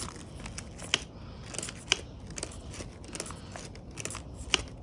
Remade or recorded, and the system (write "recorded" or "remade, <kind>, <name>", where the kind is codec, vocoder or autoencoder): recorded